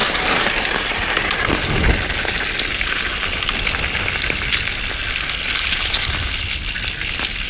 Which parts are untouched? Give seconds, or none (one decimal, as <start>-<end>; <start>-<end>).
0.0-7.5